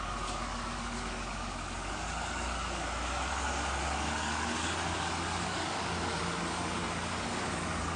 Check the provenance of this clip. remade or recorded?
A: remade